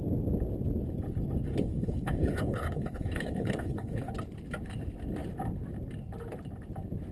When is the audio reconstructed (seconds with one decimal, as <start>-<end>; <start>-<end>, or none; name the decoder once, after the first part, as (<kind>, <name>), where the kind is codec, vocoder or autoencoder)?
1.5-4.1 (codec, HILCodec)